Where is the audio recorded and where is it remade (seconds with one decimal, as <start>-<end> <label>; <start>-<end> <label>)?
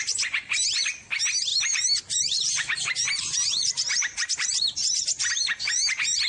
0.0-1.5 recorded; 1.5-5.3 remade; 5.3-6.3 recorded